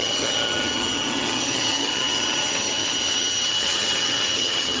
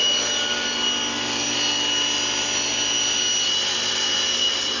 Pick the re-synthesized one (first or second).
first